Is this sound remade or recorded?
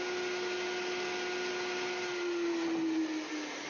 recorded